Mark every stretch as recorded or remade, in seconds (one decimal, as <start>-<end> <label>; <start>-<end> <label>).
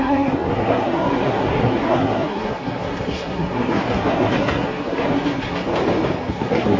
0.0-5.7 remade; 5.7-6.3 recorded; 6.3-6.8 remade